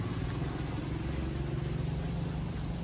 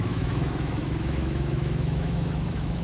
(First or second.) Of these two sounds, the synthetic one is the second